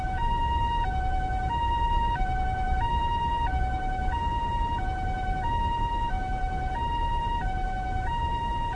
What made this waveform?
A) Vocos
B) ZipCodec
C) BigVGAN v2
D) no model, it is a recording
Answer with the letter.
D